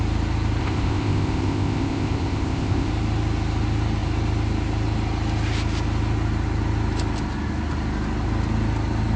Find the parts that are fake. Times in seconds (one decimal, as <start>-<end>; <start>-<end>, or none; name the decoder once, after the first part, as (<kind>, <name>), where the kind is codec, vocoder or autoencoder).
0.6-2.9 (codec, ZipCodec)